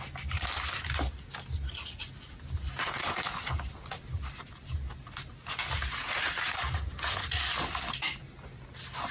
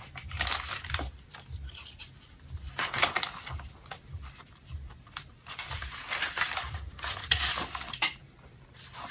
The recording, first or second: first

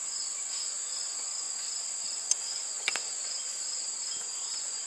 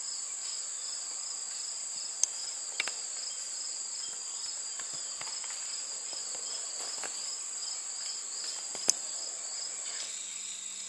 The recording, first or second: second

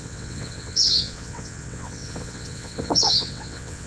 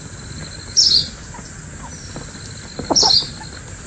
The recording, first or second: second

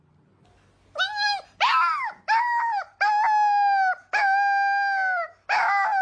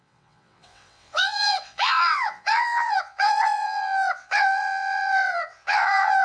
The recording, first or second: first